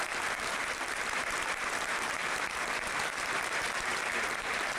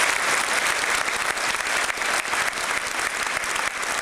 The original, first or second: second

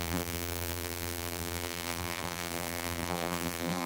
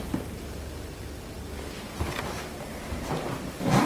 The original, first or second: second